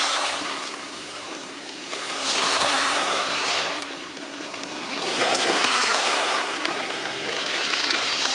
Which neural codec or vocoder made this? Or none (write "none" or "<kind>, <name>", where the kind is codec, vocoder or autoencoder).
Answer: codec, SNAC